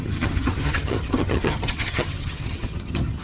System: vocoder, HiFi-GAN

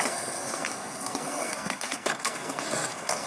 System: codec, SNAC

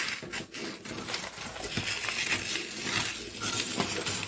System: none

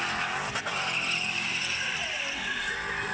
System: vocoder, BigVGAN v2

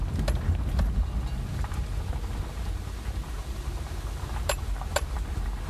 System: none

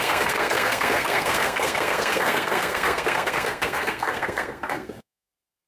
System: codec, SNAC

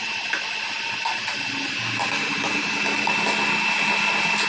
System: none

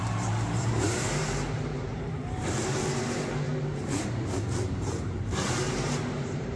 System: vocoder, BigVGAN v2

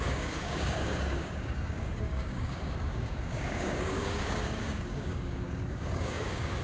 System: codec, DAC